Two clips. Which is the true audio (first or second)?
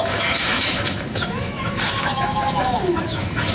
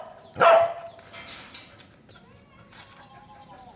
second